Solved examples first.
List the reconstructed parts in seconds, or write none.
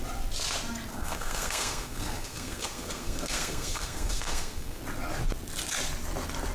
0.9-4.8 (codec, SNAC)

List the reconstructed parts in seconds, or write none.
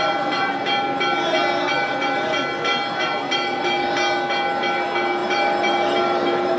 5.2-6.6 (vocoder, BigVGAN v2)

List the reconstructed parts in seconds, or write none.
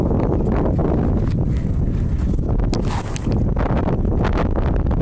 none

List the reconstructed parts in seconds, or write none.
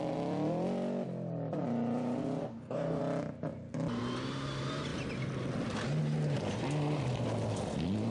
2.4-3.0 (codec, DAC)